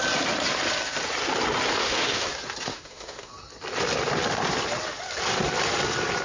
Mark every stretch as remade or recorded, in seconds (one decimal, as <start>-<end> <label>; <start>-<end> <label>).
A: 0.0-1.8 recorded; 1.8-2.3 remade; 2.3-2.7 recorded; 2.7-3.3 remade; 3.3-6.2 recorded